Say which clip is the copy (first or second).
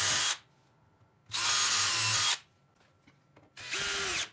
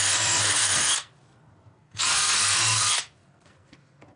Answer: second